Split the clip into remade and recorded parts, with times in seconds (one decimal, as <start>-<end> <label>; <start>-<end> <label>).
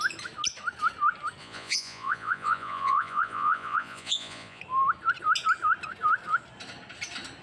0.0-1.4 recorded; 1.4-4.6 remade; 4.6-7.4 recorded